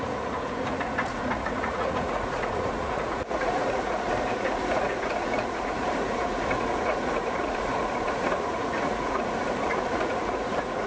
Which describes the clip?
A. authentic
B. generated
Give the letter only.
B